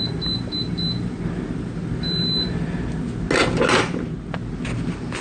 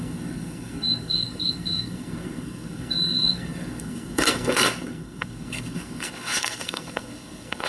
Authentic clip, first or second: first